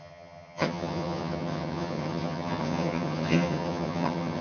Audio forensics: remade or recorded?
remade